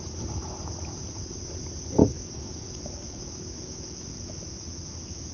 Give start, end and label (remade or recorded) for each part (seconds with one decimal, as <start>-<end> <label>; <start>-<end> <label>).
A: 0.0-2.0 recorded; 2.0-5.3 remade